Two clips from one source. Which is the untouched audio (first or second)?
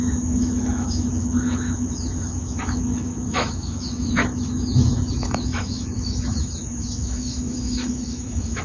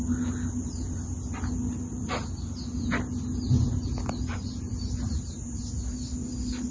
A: second